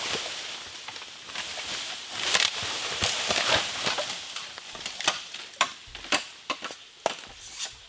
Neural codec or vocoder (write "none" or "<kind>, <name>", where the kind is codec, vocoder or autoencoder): vocoder, BigVGAN v2